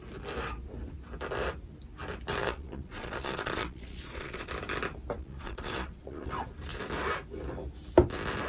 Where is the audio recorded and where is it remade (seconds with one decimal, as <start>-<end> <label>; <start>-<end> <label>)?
0.0-2.4 recorded; 2.4-4.5 remade; 4.5-5.2 recorded; 5.2-6.3 remade; 6.3-8.5 recorded